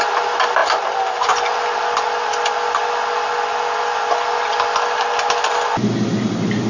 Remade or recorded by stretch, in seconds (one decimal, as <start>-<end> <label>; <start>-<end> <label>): 0.0-6.7 recorded